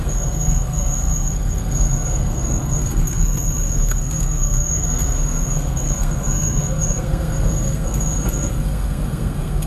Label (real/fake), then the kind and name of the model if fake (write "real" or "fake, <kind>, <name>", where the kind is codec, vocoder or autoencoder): fake, codec, SNAC